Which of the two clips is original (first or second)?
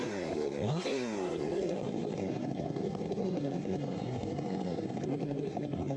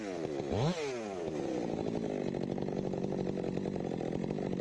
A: second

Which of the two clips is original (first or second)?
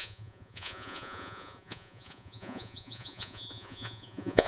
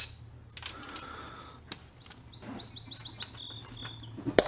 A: second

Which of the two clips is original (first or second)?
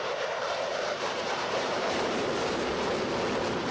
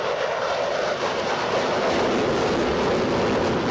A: second